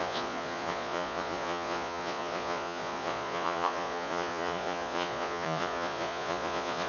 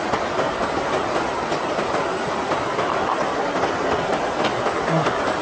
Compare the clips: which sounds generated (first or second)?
first